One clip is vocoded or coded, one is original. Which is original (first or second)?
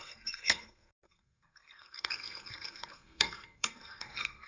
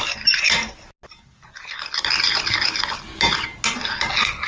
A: second